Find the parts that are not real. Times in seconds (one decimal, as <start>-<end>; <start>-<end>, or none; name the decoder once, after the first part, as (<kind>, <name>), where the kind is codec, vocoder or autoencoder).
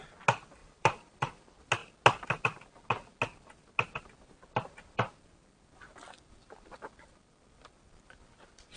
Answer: 0.6-1.4 (vocoder, BigVGAN v2)